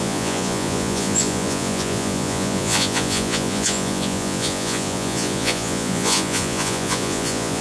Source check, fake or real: fake